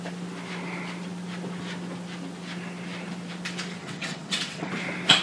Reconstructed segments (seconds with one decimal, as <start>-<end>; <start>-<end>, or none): 3.8-4.7